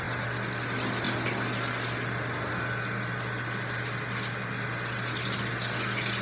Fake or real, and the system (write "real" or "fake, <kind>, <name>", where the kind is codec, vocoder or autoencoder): real